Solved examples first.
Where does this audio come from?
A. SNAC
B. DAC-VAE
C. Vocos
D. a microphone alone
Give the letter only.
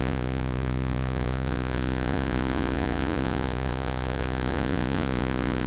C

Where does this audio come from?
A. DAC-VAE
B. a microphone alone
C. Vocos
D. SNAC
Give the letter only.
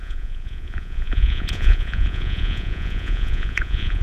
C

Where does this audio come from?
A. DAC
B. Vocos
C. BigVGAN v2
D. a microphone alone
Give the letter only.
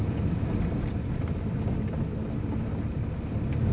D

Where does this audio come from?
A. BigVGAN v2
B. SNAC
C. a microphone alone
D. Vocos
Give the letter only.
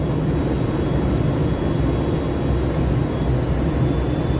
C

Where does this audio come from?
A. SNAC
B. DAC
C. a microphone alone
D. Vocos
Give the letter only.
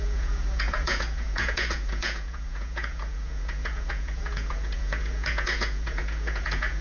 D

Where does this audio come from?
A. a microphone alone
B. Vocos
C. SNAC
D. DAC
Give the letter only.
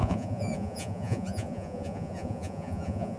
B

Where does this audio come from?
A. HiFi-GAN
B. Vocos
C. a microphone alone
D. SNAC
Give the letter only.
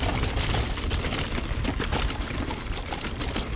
C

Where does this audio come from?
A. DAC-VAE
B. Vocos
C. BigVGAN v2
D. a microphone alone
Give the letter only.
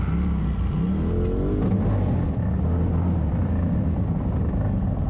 D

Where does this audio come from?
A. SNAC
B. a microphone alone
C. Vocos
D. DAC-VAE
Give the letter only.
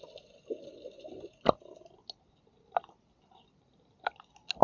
B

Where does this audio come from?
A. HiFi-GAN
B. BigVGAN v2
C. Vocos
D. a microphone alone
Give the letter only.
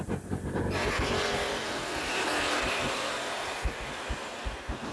D